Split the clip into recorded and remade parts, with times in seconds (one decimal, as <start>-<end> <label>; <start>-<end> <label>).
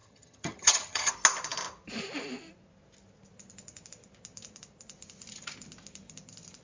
0.0-1.1 remade; 1.1-6.6 recorded